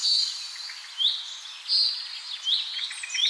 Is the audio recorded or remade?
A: recorded